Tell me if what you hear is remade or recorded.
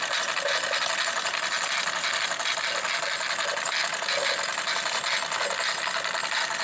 recorded